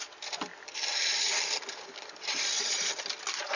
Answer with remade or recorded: remade